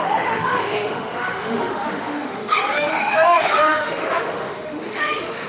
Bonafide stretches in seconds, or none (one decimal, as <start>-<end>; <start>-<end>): none